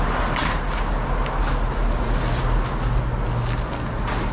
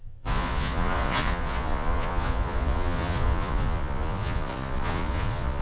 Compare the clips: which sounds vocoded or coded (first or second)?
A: second